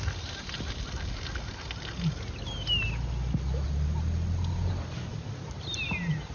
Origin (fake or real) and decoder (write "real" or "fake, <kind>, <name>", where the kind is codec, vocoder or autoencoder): real